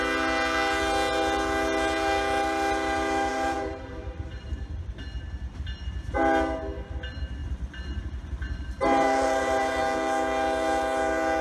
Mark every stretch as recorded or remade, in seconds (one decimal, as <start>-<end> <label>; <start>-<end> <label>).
0.0-3.3 recorded; 3.3-4.9 remade; 4.9-7.4 recorded; 7.4-9.8 remade; 9.8-11.4 recorded